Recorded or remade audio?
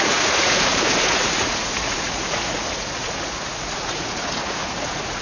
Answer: remade